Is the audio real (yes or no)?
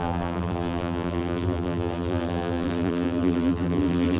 no